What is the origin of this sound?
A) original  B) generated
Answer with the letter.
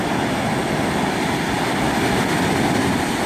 A